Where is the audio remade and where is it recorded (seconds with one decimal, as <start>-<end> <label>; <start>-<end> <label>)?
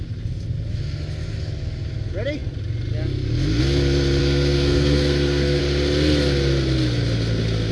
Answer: 0.0-4.2 recorded; 4.2-5.6 remade; 5.6-7.7 recorded